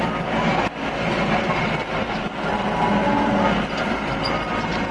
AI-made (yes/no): no